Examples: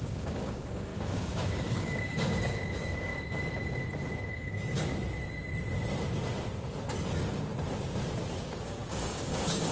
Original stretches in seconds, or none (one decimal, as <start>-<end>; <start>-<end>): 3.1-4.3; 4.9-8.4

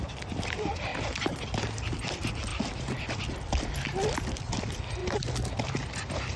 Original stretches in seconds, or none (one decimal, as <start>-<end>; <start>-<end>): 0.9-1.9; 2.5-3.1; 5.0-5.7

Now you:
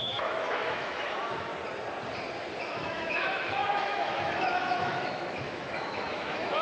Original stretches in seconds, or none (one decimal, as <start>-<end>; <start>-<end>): 1.5-2.6

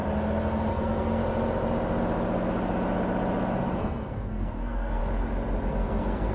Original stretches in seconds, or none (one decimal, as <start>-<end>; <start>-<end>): 0.0-0.7; 1.2-3.8; 5.0-5.7

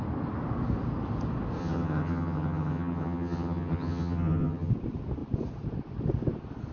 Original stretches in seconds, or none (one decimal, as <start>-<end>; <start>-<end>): 0.0-1.6; 4.7-6.7

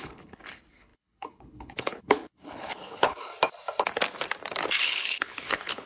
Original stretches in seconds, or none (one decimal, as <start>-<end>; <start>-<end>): 3.3-4.8

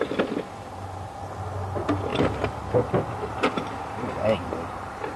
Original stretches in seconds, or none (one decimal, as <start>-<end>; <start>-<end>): 0.0-5.2

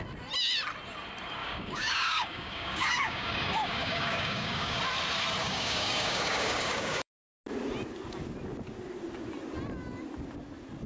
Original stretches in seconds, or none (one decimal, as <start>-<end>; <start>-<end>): 0.0-1.4; 4.8-5.4; 7.1-10.9